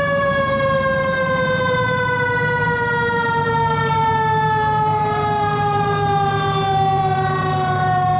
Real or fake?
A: fake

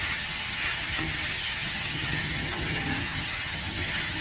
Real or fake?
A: fake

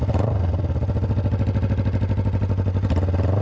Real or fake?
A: real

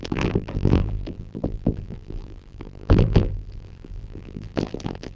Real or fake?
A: fake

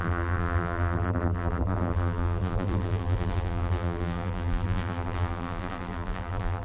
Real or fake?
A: fake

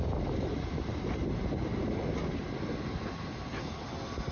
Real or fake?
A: real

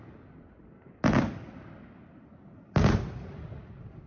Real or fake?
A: real